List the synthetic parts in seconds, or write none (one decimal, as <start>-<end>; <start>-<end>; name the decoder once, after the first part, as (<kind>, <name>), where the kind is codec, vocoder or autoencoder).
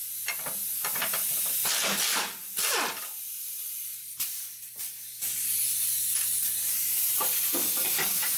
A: none